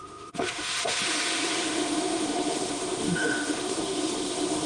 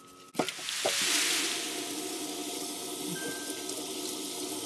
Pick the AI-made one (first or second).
first